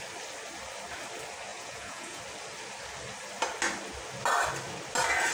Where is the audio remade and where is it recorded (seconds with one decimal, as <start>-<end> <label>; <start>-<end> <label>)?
0.0-1.5 recorded; 1.5-2.2 remade; 2.2-5.3 recorded